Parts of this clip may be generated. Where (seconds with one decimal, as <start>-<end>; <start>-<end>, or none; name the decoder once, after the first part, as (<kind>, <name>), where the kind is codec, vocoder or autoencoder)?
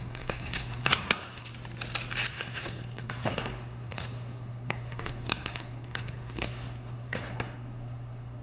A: 0.0-1.5 (codec, SNAC); 2.3-8.4